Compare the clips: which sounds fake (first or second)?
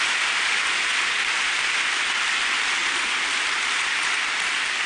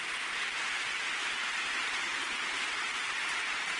second